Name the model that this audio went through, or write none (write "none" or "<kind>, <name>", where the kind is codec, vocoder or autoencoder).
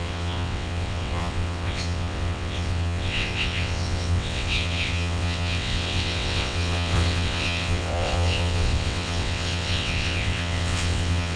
vocoder, WaveNeXt